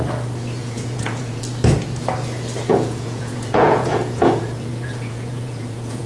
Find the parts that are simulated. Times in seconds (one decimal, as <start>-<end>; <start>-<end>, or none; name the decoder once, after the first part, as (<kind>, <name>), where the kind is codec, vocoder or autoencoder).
0.6-1.4 (vocoder, Vocos); 2.7-6.1